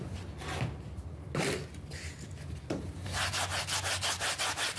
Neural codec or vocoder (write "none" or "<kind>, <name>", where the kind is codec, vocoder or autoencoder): none